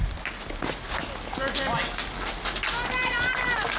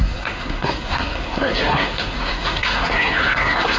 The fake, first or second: second